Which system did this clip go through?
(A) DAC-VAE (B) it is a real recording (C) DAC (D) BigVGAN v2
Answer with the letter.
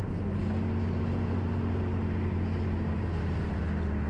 B